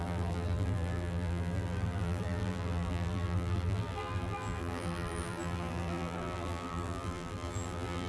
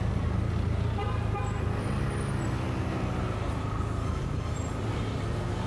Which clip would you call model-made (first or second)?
first